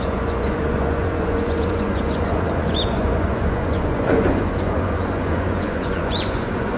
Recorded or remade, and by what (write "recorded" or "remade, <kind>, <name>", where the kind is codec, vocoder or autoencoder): remade, vocoder, Vocos